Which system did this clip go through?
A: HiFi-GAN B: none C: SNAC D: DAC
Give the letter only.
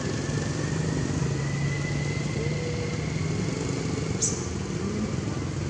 B